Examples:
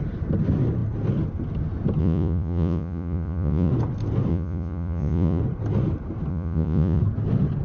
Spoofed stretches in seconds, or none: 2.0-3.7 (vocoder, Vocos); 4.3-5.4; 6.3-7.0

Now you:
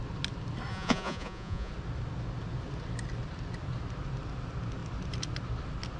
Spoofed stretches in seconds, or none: 0.7-1.7 (vocoder, Vocos)